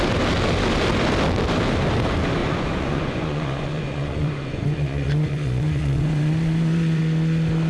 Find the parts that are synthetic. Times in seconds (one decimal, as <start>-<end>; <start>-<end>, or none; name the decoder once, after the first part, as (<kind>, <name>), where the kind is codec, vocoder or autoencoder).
2.4-7.0 (vocoder, Vocos)